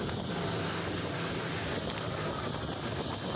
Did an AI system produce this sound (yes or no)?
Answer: no